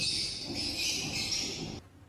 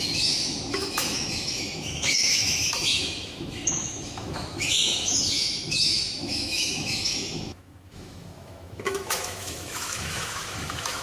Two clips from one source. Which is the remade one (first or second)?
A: second